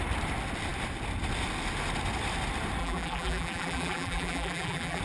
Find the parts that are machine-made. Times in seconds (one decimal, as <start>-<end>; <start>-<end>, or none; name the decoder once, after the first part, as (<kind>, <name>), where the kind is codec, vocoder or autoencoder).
2.8-5.0 (vocoder, BigVGAN v2)